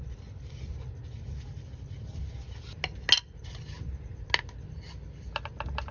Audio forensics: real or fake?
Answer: real